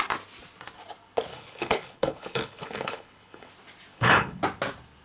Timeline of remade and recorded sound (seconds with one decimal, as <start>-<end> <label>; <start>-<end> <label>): 0.0-1.3 recorded; 1.3-3.5 remade; 3.5-3.9 recorded; 3.9-4.4 remade; 4.4-5.0 recorded